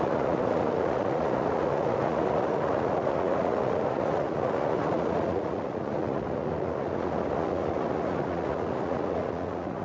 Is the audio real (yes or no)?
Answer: no